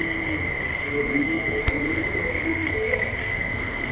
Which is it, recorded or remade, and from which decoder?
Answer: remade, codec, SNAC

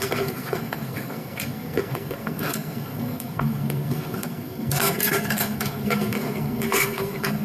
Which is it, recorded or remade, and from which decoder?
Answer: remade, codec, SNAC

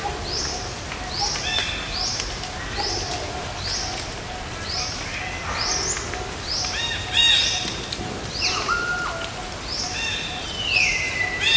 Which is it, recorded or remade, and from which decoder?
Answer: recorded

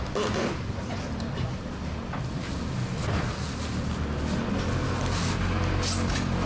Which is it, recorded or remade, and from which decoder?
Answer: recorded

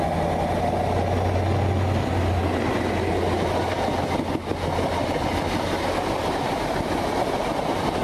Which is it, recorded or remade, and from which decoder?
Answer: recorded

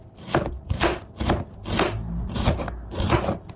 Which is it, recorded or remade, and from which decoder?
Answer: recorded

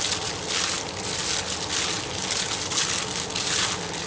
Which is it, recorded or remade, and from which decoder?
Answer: recorded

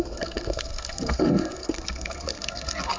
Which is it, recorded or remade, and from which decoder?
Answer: remade, codec, SNAC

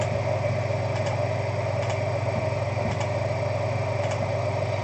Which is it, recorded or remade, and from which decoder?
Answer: recorded